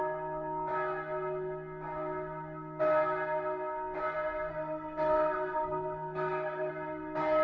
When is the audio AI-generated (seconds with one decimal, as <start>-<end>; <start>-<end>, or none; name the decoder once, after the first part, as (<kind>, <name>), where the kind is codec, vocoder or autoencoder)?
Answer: 4.5-6.7 (codec, SNAC)